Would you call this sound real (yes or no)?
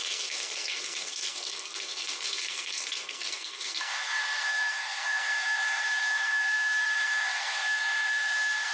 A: no